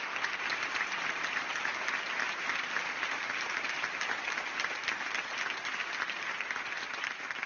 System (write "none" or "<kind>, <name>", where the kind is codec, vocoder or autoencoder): none